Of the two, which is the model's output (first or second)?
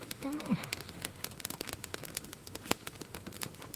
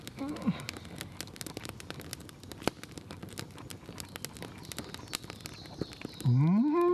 first